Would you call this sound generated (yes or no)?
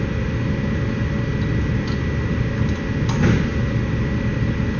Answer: no